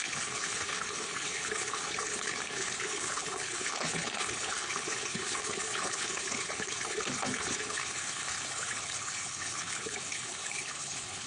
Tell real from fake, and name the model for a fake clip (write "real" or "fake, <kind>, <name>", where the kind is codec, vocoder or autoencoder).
fake, codec, HILCodec